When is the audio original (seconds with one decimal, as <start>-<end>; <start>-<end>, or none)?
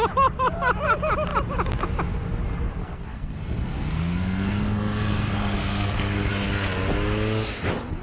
0.0-2.8; 6.3-8.0